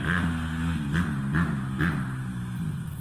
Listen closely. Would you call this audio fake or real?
real